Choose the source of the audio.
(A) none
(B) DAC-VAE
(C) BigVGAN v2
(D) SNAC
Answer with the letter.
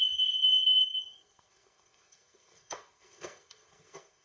D